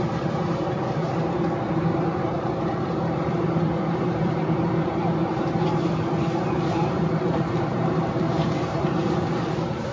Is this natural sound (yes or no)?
no